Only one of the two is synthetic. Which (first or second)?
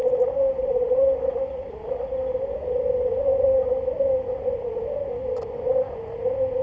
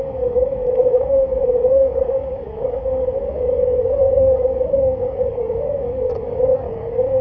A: second